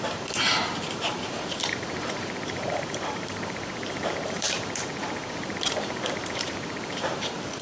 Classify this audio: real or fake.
fake